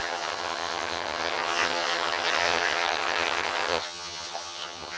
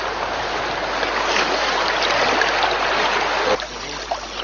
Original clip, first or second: second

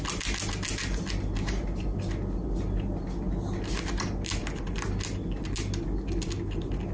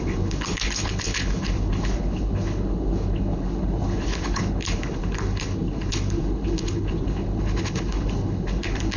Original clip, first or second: first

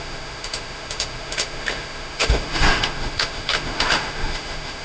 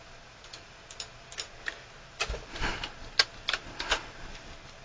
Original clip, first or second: second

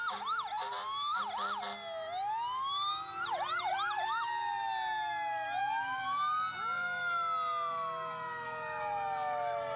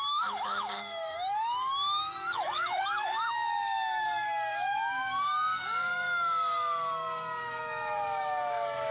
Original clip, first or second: first